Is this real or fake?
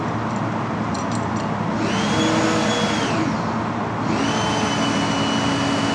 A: real